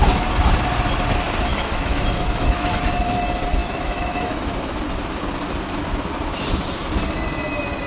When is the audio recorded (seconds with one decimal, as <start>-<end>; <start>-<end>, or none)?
0.0-1.5; 2.8-3.6; 4.8-7.9